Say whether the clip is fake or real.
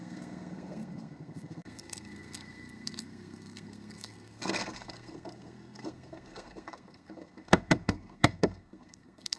fake